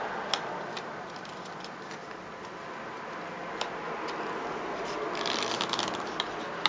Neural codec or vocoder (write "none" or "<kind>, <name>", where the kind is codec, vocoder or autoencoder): none